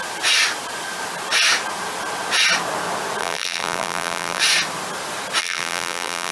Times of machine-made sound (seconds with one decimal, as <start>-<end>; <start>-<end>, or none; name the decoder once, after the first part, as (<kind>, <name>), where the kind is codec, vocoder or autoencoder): 3.2-4.4 (vocoder, BigVGAN v2); 5.4-6.3